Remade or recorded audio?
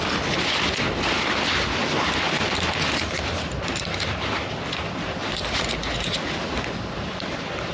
recorded